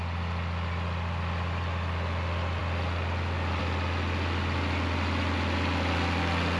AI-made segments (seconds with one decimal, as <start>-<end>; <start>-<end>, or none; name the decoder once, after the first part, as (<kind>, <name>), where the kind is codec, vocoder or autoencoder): none